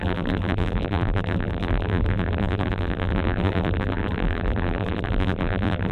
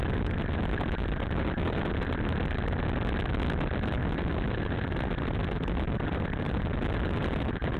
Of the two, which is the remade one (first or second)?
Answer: first